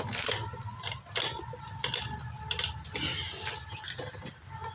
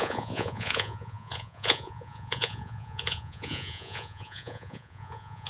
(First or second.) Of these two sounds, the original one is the first